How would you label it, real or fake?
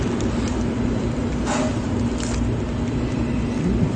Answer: real